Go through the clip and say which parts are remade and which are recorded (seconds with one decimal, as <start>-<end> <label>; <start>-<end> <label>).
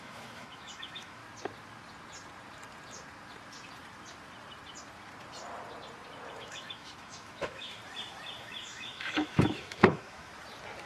0.0-1.2 remade; 1.2-6.3 recorded; 6.3-7.8 remade; 7.8-8.4 recorded; 8.4-10.3 remade; 10.3-10.9 recorded